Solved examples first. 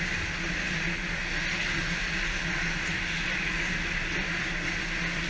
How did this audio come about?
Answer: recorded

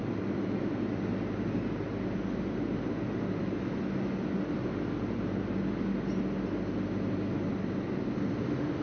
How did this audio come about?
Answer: recorded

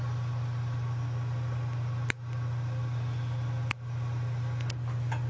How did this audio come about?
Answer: recorded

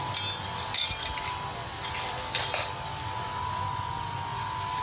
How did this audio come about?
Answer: recorded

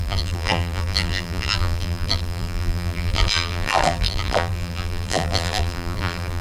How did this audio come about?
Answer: remade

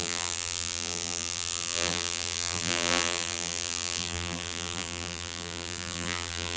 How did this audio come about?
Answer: remade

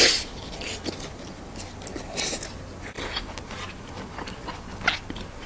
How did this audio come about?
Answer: recorded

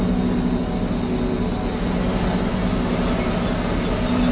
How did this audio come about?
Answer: recorded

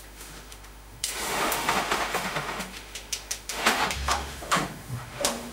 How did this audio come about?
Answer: remade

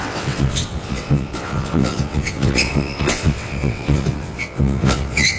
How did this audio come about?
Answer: remade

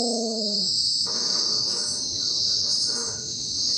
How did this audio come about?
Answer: remade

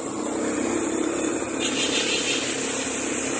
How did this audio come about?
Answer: recorded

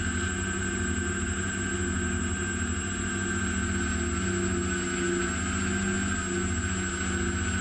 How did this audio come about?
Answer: recorded